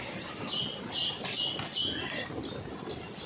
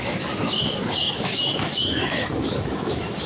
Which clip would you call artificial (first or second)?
second